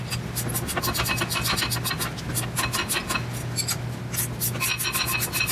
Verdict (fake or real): real